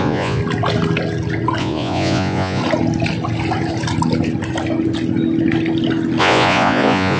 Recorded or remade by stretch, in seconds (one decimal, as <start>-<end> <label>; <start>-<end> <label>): 0.0-0.4 remade; 0.4-1.6 recorded; 1.6-2.6 remade; 2.6-6.2 recorded; 6.2-7.2 remade